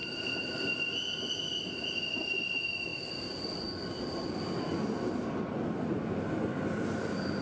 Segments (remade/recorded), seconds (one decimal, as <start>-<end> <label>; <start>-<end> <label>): 0.0-7.4 recorded